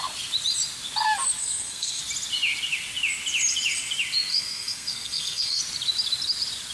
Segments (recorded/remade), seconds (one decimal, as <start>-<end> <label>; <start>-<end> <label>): 0.0-1.4 recorded; 1.4-2.0 remade; 2.0-4.3 recorded; 4.3-5.6 remade; 5.6-6.7 recorded